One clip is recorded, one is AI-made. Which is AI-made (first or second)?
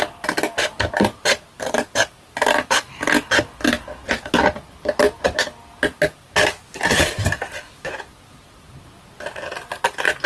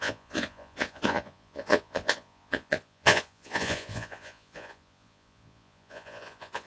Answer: second